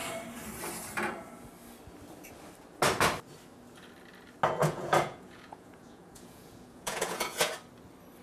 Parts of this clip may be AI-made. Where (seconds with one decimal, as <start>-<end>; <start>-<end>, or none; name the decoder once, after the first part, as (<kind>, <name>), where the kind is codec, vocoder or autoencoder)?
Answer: 4.6-7.5 (vocoder, Vocos)